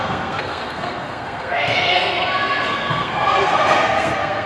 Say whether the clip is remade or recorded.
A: remade